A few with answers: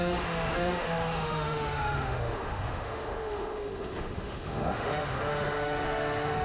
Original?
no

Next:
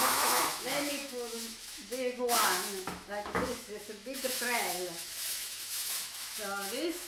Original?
no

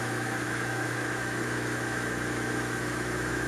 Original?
no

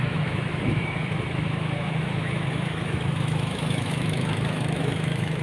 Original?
no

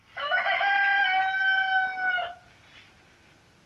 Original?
yes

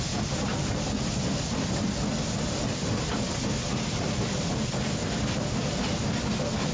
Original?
yes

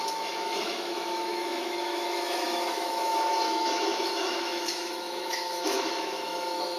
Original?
no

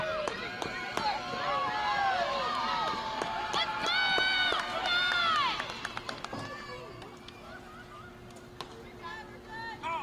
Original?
yes